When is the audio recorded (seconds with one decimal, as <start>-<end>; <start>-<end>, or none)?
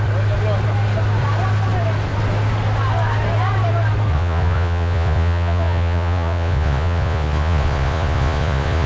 0.0-4.1